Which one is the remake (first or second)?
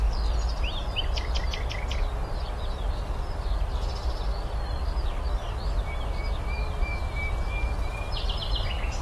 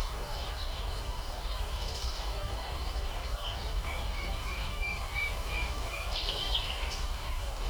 second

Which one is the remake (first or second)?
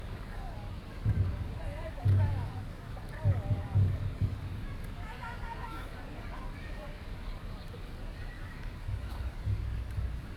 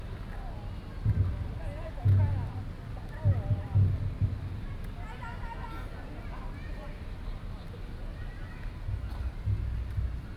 first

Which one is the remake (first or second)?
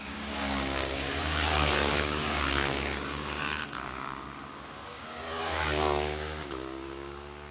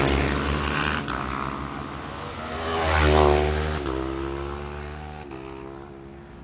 first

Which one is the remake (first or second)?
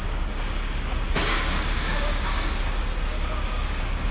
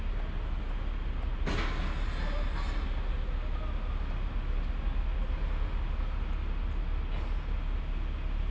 first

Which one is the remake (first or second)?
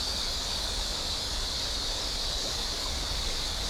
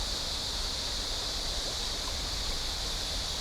first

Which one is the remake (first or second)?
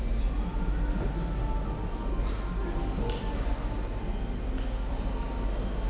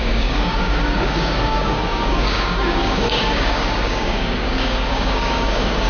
second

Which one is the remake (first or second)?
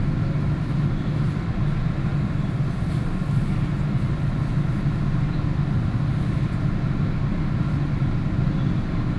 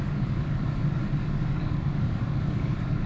second